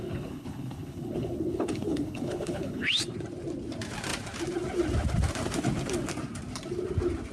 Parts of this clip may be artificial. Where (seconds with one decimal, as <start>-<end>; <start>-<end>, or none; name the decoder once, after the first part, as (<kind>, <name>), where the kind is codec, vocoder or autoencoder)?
0.0-2.9 (codec, HILCodec)